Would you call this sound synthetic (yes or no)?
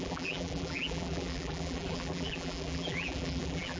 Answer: yes